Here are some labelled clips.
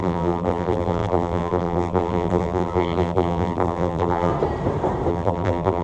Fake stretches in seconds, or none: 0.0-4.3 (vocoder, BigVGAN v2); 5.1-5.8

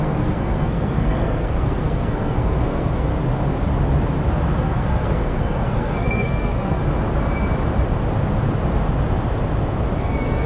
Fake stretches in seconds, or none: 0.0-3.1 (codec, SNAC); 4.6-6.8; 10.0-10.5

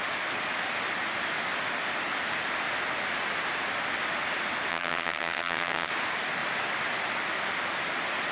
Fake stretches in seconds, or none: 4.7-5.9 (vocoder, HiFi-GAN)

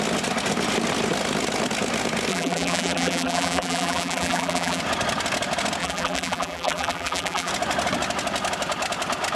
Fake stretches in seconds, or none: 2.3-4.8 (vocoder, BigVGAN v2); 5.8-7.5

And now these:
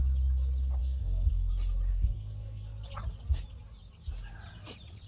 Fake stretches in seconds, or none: 0.8-1.5 (codec, SNAC); 1.9-2.8

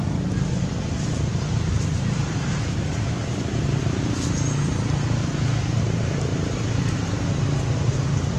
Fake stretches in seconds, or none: 1.5-4.0 (vocoder, BigVGAN v2); 6.3-7.2